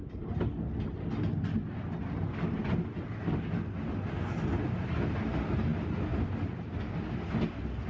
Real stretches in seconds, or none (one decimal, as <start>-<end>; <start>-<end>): 0.0-7.9